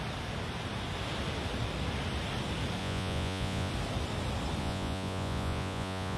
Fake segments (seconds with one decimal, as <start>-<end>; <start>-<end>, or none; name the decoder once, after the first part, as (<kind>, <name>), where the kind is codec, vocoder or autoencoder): 2.8-3.7 (vocoder, Vocos); 4.6-6.2